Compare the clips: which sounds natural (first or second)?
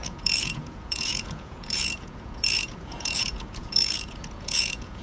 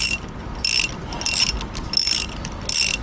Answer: second